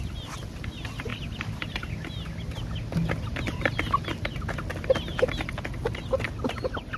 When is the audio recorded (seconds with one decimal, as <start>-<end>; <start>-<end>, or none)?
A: 0.0-7.0

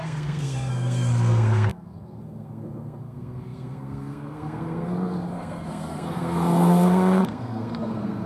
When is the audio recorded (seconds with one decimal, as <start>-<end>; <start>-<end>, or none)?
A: none

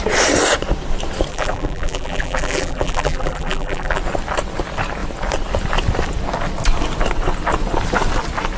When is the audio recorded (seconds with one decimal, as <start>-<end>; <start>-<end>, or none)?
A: 0.0-1.3; 4.0-8.6

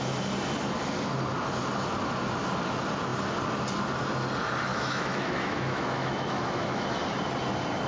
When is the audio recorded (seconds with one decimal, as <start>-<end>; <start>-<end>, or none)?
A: 0.0-4.7; 7.0-7.9

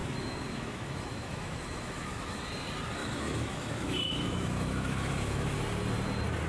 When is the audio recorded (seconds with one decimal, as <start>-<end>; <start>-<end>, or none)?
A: 2.4-3.0; 5.6-6.5

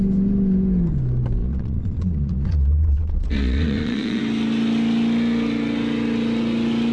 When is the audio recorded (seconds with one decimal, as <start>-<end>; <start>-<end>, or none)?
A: 0.0-1.4; 4.2-6.9

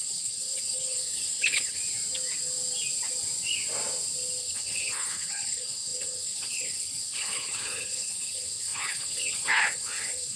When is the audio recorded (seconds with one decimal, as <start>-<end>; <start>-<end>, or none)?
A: 1.8-4.4